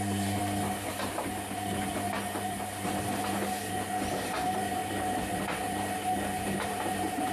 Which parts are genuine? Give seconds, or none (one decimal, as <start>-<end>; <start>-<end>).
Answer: 0.4-4.1; 4.8-6.4